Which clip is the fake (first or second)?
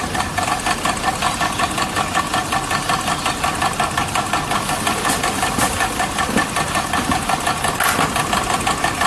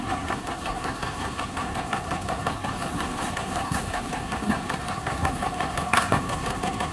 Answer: second